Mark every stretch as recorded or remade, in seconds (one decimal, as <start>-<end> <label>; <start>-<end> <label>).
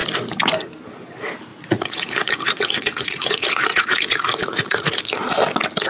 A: 0.0-1.5 recorded; 1.5-5.0 remade; 5.0-5.9 recorded